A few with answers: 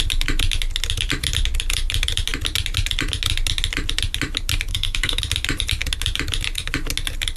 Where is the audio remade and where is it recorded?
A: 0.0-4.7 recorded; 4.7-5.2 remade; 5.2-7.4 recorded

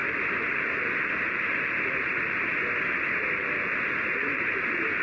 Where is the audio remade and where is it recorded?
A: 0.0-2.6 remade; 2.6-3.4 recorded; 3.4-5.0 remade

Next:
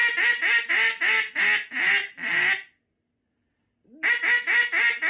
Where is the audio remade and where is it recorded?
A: 0.0-5.1 recorded

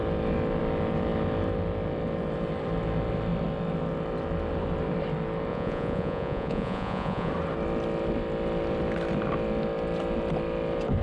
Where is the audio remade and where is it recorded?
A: 0.0-5.5 recorded; 5.5-7.3 remade; 7.3-11.0 recorded

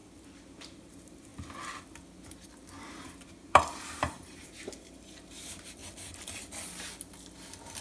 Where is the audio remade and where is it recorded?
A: 0.0-0.6 recorded; 0.6-1.3 remade; 1.3-3.3 recorded; 3.3-5.8 remade; 5.8-7.8 recorded

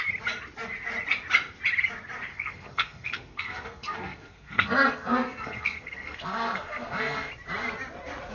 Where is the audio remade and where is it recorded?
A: 0.0-2.3 recorded; 2.3-7.3 remade; 7.3-8.3 recorded

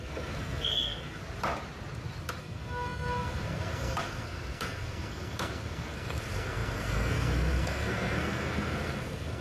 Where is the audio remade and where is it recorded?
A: 0.0-1.2 remade; 1.2-2.4 recorded; 2.4-9.4 remade